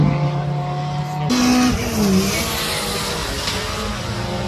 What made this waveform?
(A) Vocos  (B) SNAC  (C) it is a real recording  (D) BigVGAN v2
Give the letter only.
C